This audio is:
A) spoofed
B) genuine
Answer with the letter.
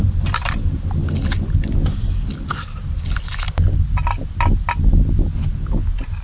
B